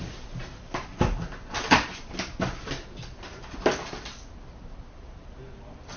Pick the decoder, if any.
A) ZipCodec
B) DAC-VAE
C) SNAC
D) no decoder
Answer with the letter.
D